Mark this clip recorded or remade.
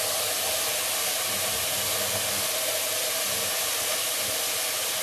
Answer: remade